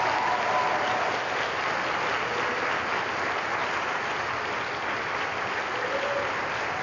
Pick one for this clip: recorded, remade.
recorded